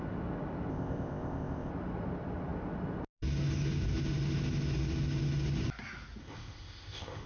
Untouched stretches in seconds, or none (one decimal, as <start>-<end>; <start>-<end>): 0.0-0.7; 1.7-6.2